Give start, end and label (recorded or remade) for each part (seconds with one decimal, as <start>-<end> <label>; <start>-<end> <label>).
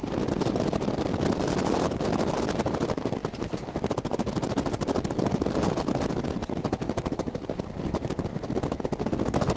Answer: 0.0-9.6 recorded